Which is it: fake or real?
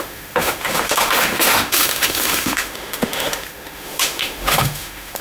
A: fake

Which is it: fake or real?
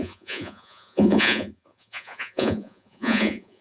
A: fake